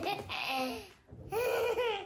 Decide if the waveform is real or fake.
real